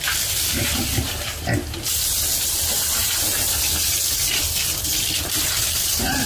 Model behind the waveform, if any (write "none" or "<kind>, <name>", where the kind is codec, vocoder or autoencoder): none